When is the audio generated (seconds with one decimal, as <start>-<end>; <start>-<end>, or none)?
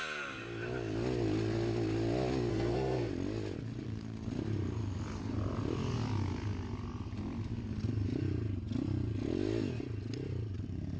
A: 2.5-3.1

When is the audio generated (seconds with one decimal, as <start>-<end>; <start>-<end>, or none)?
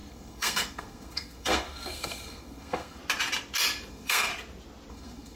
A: 0.0-3.0; 3.9-4.3; 4.9-5.4